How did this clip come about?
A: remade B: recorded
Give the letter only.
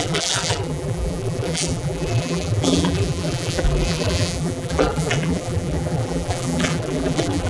A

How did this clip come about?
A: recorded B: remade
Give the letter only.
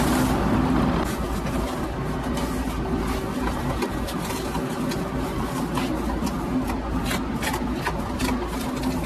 A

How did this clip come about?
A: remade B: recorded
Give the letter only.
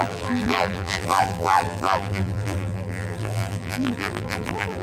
A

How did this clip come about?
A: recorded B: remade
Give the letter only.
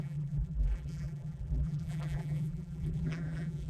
B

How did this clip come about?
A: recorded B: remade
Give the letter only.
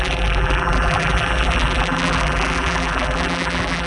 B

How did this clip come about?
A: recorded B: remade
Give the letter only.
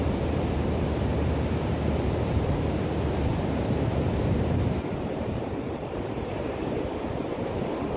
B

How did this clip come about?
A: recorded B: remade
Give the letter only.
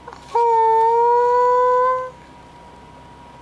A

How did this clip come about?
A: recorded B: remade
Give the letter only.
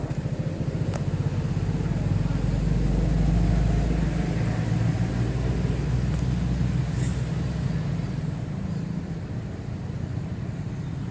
A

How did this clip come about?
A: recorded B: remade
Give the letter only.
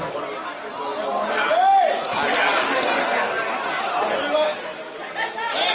A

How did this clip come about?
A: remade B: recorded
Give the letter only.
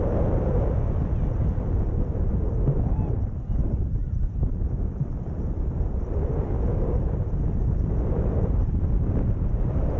A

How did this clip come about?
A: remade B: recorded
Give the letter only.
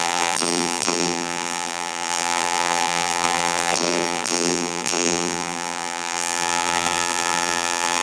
A